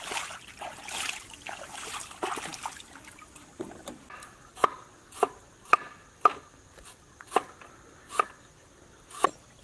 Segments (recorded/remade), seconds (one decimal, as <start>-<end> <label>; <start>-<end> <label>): 0.0-9.6 recorded